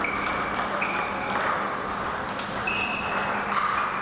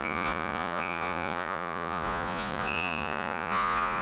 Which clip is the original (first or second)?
first